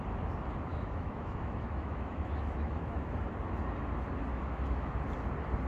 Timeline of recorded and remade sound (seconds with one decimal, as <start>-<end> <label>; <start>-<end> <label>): 0.0-0.7 recorded; 0.7-3.2 remade; 3.2-4.3 recorded; 4.3-4.9 remade; 4.9-5.7 recorded